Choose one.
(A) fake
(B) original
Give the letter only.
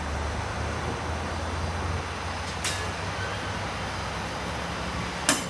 B